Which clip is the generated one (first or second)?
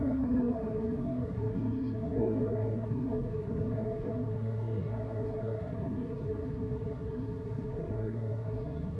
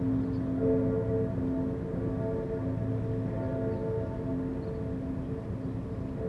first